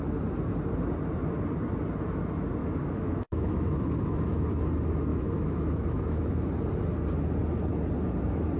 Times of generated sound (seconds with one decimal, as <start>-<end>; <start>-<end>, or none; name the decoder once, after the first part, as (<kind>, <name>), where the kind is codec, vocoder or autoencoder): 2.6-4.6 (autoencoder, DAC-VAE); 5.1-6.5